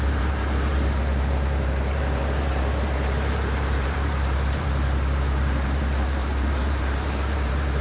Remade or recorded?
remade